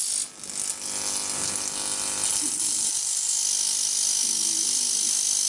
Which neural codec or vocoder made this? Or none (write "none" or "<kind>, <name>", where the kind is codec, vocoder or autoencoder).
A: none